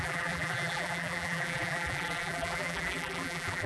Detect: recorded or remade remade